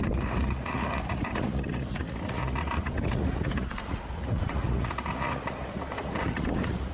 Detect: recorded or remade remade